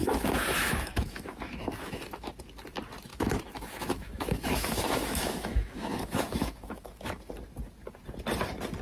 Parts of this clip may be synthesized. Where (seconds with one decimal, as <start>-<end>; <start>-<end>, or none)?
0.0-2.3; 3.1-7.3